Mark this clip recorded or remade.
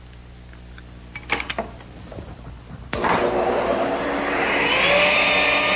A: recorded